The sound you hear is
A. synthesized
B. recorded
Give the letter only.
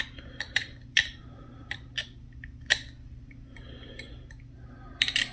B